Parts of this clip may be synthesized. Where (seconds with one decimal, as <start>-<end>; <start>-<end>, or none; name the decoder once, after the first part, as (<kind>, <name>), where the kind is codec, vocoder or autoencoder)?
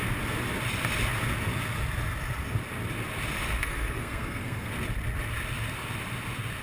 3.6-4.7 (codec, SNAC)